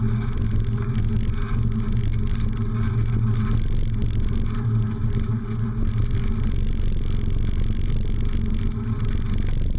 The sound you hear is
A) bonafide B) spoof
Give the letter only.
A